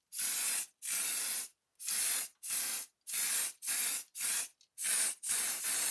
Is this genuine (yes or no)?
yes